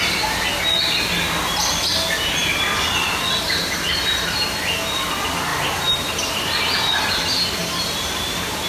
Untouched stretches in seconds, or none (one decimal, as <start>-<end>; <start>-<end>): 0.0-8.7